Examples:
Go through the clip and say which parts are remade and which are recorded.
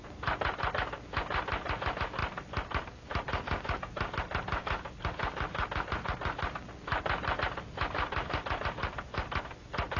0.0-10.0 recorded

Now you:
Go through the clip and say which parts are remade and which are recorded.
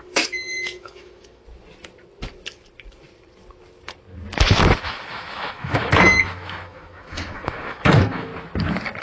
0.0-1.4 remade; 1.4-4.8 recorded; 4.8-8.3 remade; 8.3-9.0 recorded